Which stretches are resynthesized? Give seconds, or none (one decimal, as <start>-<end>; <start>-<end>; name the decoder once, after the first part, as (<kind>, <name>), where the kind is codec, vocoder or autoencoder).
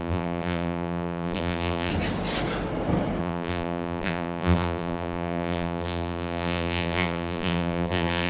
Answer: 0.0-1.9 (vocoder, BigVGAN v2); 3.2-8.3